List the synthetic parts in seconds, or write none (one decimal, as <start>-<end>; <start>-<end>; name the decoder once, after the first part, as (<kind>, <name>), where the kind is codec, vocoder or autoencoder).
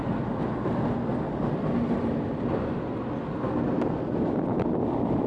0.0-5.3 (vocoder, BigVGAN v2)